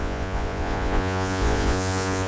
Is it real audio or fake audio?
fake